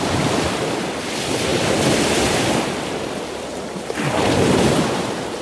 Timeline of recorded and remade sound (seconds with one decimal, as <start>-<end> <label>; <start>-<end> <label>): 0.0-5.4 recorded